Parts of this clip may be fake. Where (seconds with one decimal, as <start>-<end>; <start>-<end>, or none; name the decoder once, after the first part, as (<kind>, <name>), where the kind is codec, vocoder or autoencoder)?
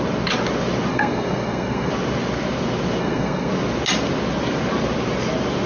0.9-1.9 (codec, SNAC); 3.0-3.5